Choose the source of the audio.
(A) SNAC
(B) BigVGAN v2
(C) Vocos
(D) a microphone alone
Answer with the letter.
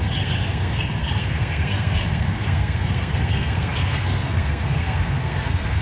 A